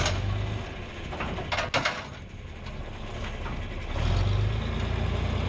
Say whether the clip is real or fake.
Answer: real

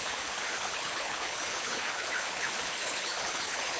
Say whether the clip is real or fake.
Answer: fake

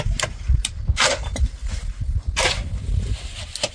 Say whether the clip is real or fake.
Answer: real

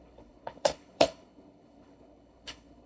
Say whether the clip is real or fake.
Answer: fake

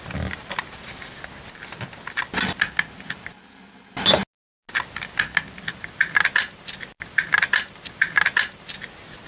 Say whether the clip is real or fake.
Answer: real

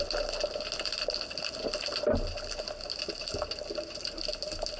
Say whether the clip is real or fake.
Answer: real